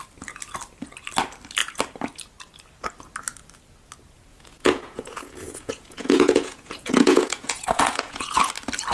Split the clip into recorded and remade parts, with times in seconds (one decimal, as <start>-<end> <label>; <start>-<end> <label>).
0.0-4.3 recorded; 4.3-8.5 remade; 8.5-8.9 recorded

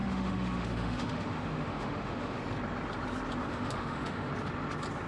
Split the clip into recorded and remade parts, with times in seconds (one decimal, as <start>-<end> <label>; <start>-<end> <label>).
0.0-2.4 remade; 2.4-3.4 recorded; 3.4-4.3 remade; 4.3-5.1 recorded